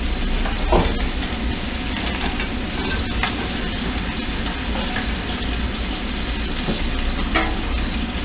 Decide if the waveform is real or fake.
real